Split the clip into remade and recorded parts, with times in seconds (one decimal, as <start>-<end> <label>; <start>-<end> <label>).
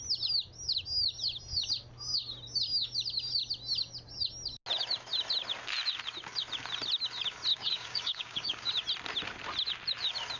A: 0.0-7.5 recorded; 7.5-8.7 remade; 8.7-10.4 recorded